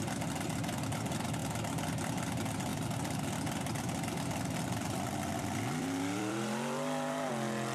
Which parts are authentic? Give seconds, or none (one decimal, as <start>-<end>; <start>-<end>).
0.0-2.7; 7.3-7.7